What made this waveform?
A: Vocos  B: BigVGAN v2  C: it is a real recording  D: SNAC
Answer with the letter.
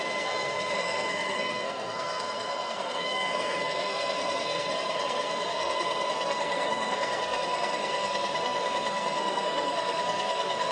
D